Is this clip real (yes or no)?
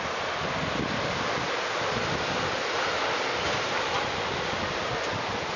yes